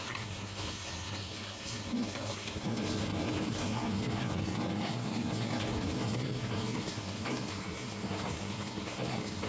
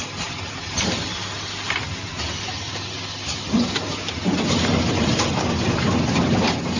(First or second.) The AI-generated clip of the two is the first